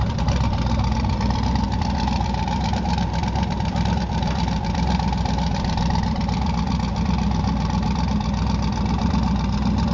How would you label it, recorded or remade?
remade